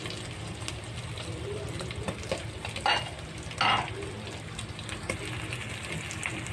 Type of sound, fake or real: real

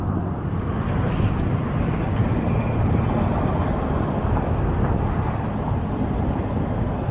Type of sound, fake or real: real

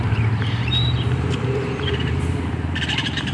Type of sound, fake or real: fake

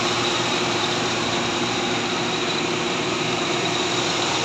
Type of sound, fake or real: fake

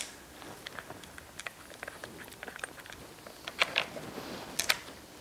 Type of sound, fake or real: real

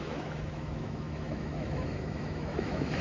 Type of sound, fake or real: fake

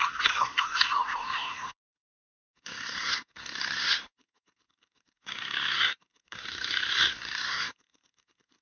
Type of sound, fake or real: fake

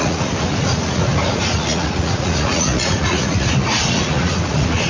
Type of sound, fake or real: fake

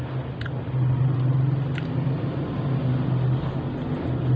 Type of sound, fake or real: real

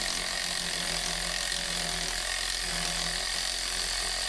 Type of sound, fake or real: real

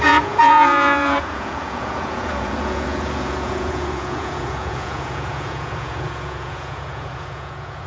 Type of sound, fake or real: fake